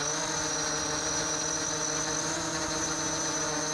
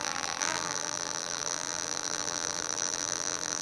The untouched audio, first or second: first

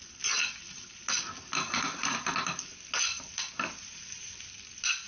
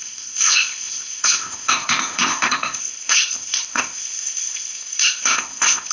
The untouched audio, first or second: first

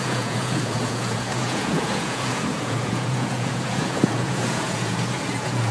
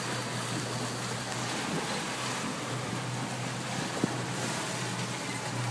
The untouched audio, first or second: second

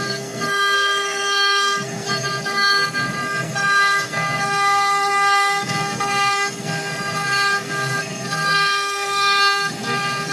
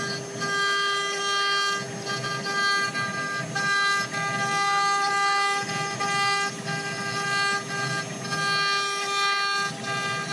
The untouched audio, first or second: second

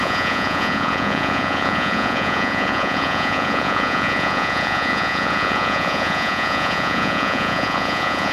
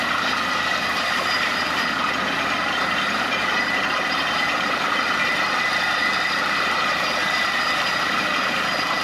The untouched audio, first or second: second